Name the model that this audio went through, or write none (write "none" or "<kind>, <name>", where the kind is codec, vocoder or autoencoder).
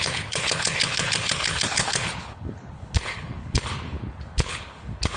codec, HILCodec